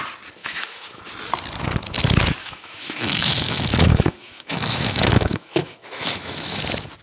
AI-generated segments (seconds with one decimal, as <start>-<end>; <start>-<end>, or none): 0.4-1.0; 2.4-6.6